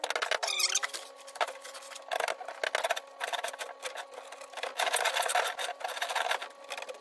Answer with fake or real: real